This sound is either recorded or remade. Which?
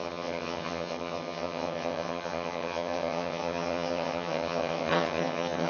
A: remade